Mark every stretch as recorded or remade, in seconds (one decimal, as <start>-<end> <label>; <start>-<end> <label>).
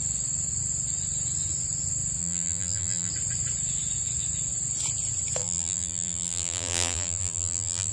0.0-2.2 recorded; 2.2-3.1 remade; 3.1-5.4 recorded; 5.4-7.9 remade